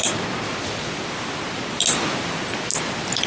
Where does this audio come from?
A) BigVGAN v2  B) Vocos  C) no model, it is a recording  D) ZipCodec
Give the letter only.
C